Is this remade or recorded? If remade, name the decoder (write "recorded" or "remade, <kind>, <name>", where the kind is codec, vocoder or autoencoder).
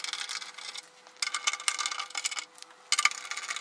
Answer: recorded